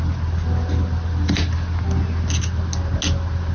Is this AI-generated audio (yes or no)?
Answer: no